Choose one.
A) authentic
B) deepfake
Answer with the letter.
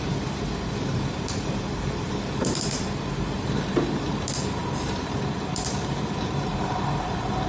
B